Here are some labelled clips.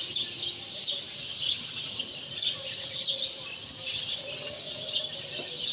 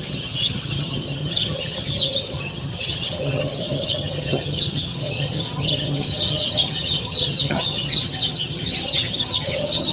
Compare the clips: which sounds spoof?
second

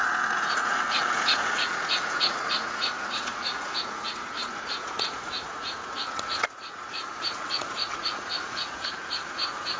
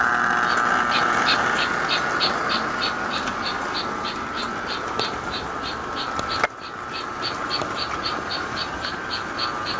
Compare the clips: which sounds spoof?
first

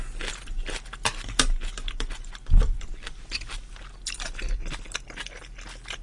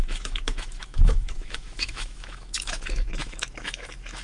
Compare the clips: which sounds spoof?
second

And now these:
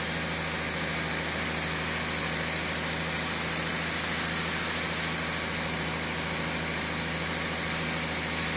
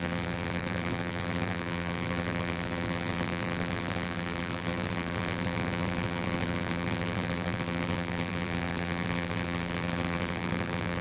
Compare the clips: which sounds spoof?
second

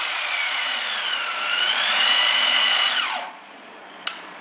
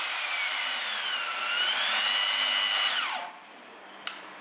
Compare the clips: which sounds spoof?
first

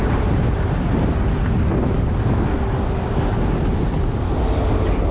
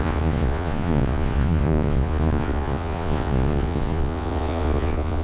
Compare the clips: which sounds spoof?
second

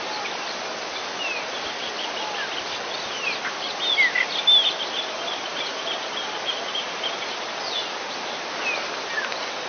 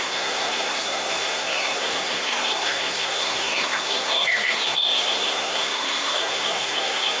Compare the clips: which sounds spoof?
second